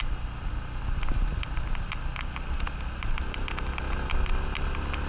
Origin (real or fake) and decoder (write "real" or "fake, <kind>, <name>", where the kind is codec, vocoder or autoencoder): real